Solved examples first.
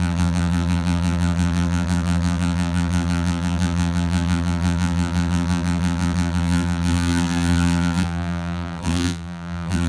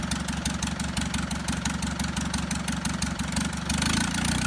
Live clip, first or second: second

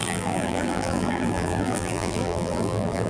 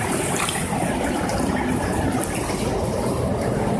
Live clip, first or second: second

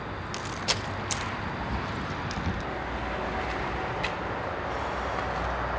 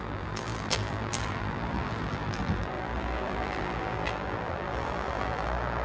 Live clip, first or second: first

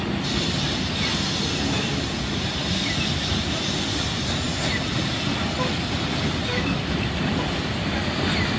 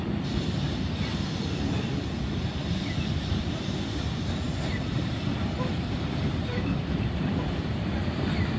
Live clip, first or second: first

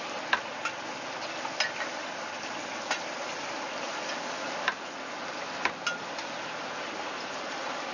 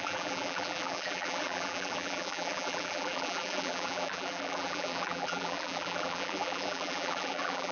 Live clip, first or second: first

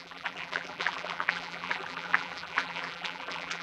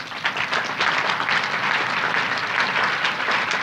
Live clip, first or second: second